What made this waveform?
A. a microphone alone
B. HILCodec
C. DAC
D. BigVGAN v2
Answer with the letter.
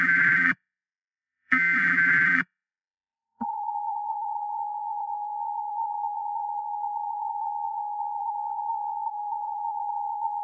D